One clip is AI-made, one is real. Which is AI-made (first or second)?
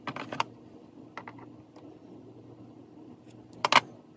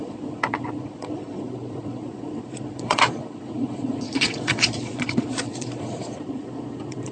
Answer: second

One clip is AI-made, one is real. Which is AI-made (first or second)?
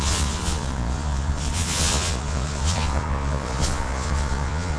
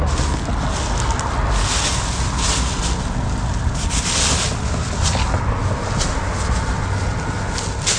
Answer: first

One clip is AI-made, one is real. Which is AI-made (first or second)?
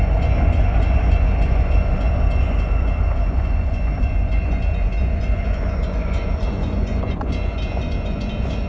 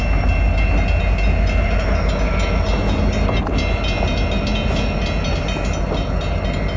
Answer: first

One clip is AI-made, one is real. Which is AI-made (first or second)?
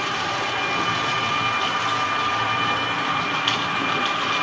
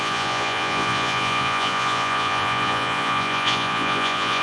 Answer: second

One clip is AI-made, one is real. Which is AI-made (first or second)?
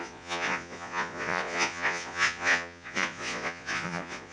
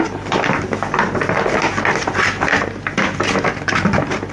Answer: first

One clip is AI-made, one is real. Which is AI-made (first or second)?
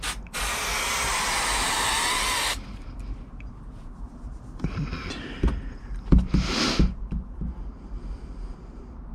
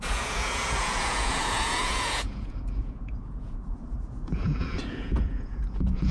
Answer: second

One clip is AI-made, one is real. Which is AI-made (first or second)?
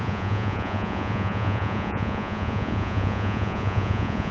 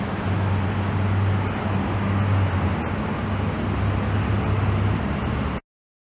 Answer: first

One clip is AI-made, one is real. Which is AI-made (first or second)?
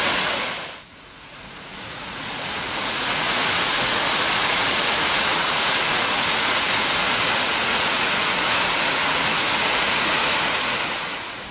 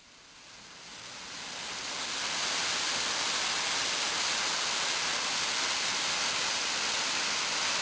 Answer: first